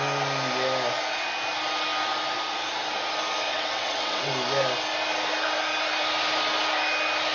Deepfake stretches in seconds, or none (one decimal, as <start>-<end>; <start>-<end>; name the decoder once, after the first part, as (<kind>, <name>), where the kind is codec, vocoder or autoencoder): 3.5-4.3 (vocoder, WaveNeXt)

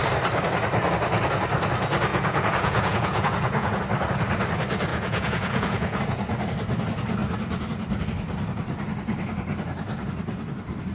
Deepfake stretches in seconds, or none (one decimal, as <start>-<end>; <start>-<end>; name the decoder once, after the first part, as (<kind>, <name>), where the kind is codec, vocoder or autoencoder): 2.1-3.8 (vocoder, Vocos); 4.9-6.0

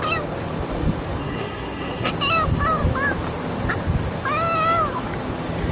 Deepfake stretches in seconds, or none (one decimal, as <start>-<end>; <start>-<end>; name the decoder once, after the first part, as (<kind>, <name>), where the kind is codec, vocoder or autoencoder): 1.2-2.1 (codec, SNAC)

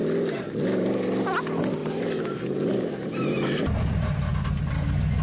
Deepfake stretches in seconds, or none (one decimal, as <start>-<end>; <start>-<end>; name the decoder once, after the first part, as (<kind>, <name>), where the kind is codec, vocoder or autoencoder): 1.8-4.6 (vocoder, BigVGAN v2)

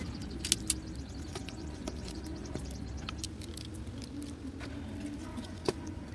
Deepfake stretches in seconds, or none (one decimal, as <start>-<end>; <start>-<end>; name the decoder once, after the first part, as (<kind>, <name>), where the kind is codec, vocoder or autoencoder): 1.3-2.6 (vocoder, Vocos); 5.2-6.1